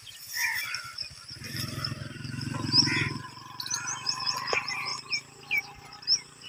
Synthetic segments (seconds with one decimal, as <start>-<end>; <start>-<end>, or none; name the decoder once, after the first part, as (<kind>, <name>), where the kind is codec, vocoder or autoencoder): none